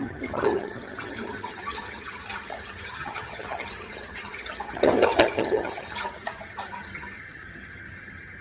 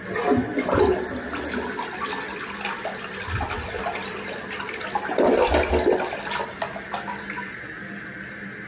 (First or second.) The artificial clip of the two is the first